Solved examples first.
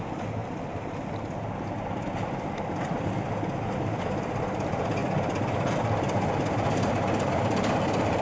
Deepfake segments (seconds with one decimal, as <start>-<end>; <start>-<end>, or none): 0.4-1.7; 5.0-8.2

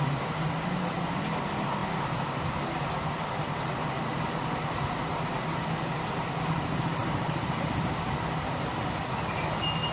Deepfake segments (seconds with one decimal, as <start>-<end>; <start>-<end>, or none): 7.0-8.8

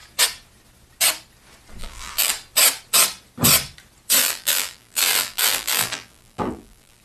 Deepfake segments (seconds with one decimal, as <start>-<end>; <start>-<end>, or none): 1.8-2.3; 4.2-7.0